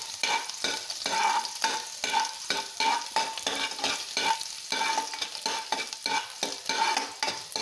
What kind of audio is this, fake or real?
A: real